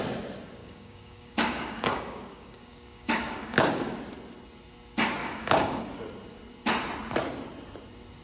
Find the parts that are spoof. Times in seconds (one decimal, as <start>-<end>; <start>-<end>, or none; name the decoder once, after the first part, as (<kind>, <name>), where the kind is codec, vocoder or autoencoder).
0.6-4.0 (codec, DAC); 5.2-5.8